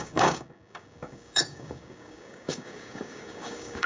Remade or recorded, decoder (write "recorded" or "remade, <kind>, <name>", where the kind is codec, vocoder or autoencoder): remade, codec, DAC